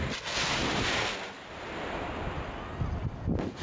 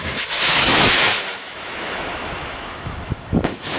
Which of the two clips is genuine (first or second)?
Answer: first